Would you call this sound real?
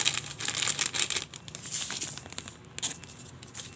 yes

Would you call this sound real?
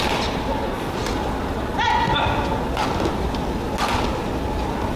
yes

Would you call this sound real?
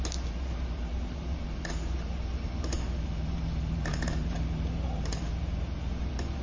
no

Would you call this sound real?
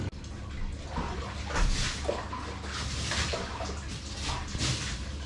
yes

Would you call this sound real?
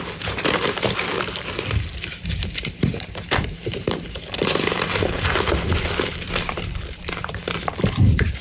no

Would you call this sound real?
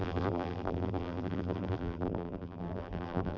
no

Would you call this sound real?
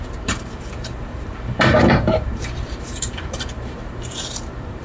no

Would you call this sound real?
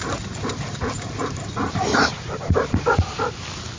yes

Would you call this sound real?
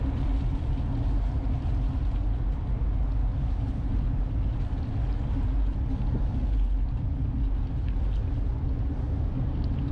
yes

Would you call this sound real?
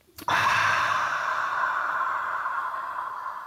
no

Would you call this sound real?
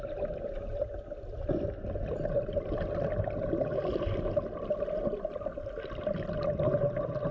yes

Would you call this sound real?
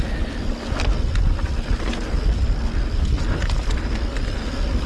yes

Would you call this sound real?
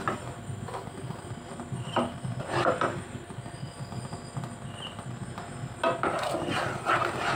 yes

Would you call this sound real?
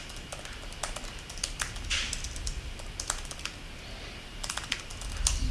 yes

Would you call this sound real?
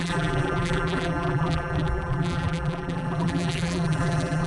no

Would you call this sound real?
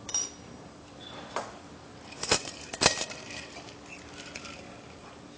yes